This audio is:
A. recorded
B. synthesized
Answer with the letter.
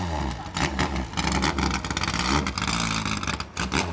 A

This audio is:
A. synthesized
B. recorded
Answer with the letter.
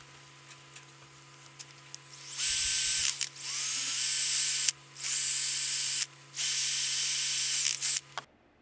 B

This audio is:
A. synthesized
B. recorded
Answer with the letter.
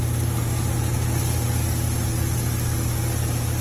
B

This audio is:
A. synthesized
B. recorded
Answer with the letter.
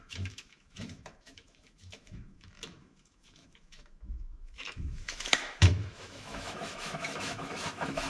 A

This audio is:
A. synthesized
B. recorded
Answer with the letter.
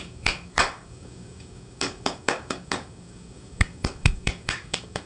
A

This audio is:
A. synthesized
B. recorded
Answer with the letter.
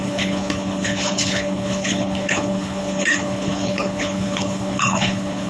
A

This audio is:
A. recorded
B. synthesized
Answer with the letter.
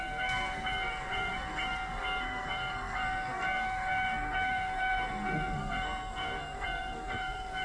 B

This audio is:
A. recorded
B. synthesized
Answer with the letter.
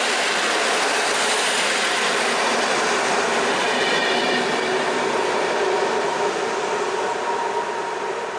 A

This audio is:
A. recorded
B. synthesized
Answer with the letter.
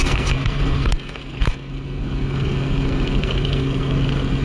B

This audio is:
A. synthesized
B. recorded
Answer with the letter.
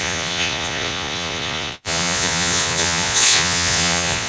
A